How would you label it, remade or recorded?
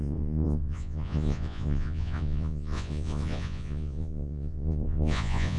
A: remade